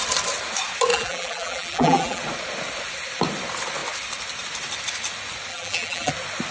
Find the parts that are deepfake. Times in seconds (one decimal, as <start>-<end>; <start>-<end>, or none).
0.9-2.2; 5.5-6.1